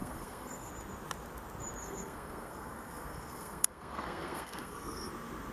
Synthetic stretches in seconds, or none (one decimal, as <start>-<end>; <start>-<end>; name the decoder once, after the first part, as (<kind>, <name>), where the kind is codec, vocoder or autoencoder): 0.0-0.7 (codec, SNAC); 1.8-5.1